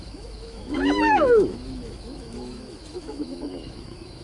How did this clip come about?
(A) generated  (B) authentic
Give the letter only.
A